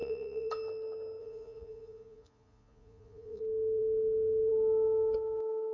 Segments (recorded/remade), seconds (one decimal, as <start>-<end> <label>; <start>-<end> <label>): 0.0-0.5 remade; 0.5-1.2 recorded; 1.2-3.4 remade; 3.4-5.7 recorded